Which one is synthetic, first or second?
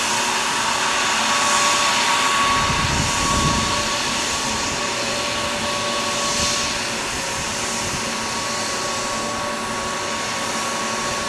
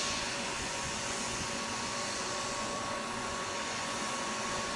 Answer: second